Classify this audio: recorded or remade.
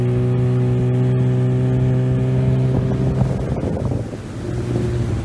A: recorded